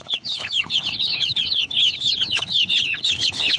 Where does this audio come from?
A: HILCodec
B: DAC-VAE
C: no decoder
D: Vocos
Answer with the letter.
A